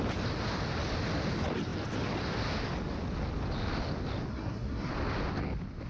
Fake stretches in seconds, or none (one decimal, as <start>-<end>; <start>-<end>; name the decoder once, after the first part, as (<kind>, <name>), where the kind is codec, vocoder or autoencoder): 4.3-4.9 (codec, SNAC)